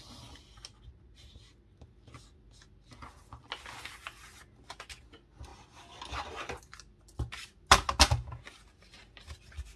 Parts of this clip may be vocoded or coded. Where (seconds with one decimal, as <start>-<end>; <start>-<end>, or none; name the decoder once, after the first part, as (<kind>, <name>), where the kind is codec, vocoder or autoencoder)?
none